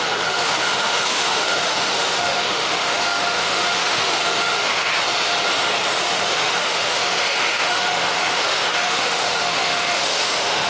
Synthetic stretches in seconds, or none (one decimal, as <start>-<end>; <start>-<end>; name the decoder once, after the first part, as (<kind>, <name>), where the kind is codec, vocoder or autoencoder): 0.0-4.9 (autoencoder, DAC-VAE); 6.1-10.7